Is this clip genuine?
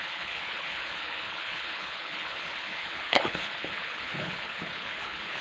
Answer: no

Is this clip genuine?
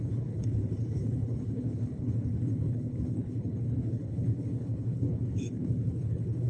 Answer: no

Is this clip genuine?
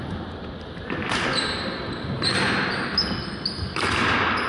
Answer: yes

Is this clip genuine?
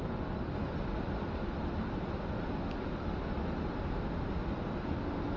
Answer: yes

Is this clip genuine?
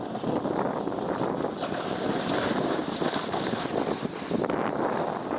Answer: yes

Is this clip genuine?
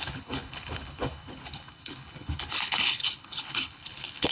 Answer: no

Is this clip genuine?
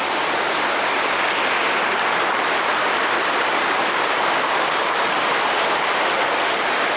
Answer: yes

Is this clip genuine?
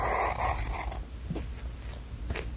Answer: yes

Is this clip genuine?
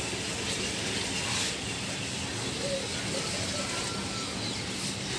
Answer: yes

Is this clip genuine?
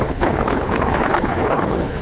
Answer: no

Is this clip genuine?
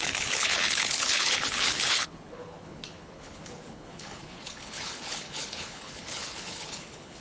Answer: no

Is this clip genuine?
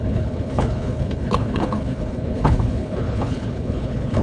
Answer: no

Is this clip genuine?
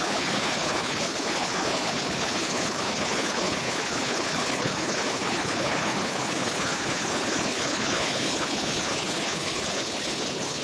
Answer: no